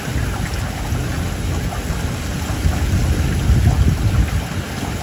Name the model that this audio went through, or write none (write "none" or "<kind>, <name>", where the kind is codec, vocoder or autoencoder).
none